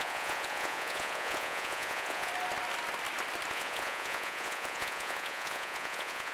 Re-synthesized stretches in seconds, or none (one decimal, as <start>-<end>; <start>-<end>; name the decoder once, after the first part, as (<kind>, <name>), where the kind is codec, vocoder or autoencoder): 0.0-2.3 (vocoder, Vocos); 3.5-6.3